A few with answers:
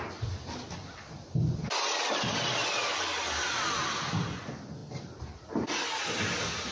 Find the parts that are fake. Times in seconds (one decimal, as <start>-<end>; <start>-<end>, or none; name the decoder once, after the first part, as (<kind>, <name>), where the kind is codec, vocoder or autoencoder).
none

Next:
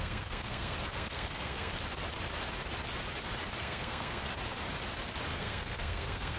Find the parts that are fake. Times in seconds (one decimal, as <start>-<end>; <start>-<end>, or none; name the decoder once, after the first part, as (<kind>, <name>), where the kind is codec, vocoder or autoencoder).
0.0-1.7 (codec, SNAC); 3.6-4.2; 5.3-6.4

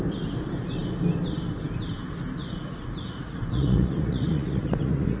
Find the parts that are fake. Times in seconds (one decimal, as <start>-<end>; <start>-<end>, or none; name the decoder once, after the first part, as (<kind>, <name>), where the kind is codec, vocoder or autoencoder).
2.4-5.2 (vocoder, Vocos)

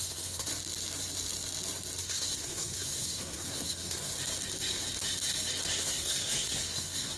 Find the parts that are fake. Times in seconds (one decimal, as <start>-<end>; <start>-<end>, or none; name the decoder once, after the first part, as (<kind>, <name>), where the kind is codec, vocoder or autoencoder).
0.0-0.5 (codec, SNAC); 2.0-4.1; 5.7-7.2

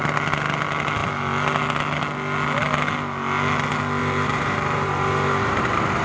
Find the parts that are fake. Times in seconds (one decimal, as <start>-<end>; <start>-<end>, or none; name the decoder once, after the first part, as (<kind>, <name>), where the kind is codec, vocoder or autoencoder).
4.0-6.0 (vocoder, BigVGAN v2)

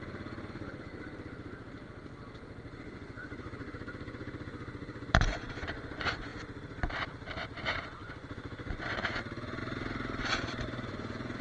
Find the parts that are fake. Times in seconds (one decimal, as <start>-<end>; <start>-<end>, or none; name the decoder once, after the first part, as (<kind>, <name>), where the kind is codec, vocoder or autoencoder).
0.0-0.9 (vocoder, Vocos); 2.8-6.3; 7.6-9.6; 10.2-11.4

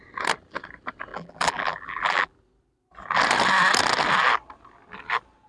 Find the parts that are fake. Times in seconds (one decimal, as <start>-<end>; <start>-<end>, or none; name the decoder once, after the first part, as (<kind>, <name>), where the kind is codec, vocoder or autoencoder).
1.1-2.3 (vocoder, BigVGAN v2)

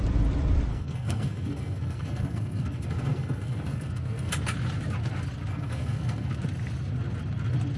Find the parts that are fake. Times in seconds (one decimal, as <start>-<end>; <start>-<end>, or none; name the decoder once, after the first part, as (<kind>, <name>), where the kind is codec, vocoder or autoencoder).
0.7-4.3 (codec, SNAC); 5.5-6.3